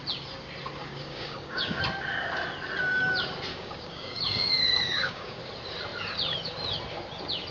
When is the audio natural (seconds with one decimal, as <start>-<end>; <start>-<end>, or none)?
0.0-0.8; 1.8-3.5; 5.4-7.5